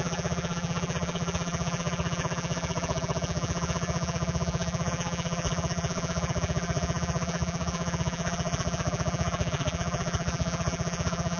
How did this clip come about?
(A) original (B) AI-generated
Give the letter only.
B